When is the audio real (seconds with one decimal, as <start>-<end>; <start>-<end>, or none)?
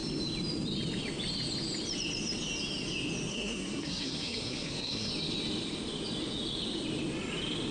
0.0-3.3; 5.1-7.7